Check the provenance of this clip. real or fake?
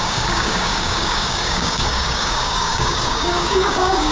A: fake